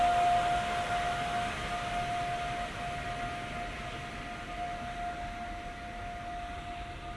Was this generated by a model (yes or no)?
no